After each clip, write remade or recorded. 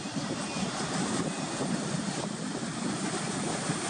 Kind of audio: recorded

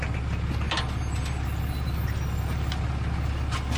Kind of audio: recorded